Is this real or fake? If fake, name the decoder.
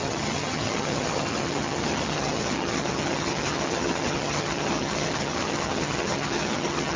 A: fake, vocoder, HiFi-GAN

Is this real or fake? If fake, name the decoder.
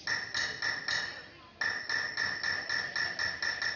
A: real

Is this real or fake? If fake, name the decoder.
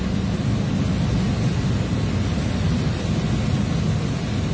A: real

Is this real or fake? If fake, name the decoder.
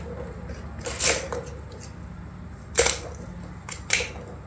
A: real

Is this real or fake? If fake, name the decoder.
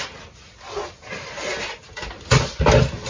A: real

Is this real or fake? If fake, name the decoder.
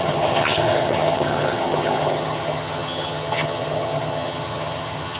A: fake, vocoder, HiFi-GAN